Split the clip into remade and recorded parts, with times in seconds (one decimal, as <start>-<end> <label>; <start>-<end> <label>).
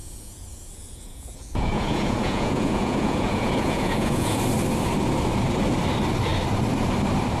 0.0-4.4 remade; 4.4-7.4 recorded